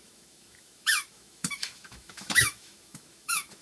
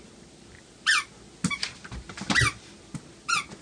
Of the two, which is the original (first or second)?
second